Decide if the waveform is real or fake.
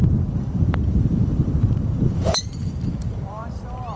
fake